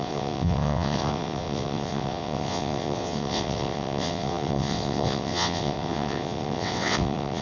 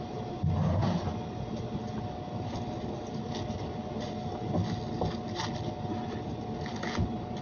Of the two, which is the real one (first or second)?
second